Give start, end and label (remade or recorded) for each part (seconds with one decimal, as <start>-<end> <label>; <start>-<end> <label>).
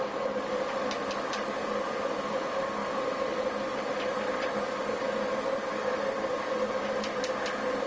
0.0-7.9 recorded